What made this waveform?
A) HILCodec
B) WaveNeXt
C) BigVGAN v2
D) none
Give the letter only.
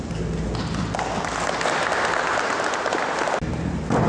D